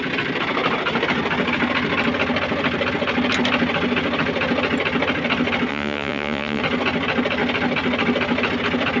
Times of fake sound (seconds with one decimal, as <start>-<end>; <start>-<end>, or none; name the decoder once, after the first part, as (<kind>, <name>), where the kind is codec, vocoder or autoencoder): 5.7-6.6 (vocoder, Vocos)